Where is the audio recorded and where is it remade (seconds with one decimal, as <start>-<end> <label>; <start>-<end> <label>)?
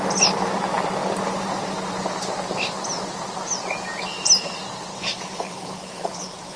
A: 0.0-4.9 recorded; 4.9-6.6 remade